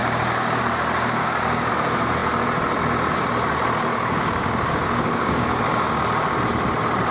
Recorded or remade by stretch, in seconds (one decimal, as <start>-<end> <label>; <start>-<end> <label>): 0.0-0.6 remade; 0.6-1.2 recorded; 1.2-1.7 remade; 1.7-3.9 recorded; 3.9-6.0 remade; 6.0-7.1 recorded